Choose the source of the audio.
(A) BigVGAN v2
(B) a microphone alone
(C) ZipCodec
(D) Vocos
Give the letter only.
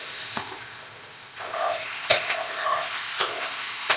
C